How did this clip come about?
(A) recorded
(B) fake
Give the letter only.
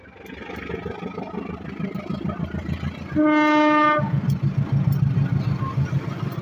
A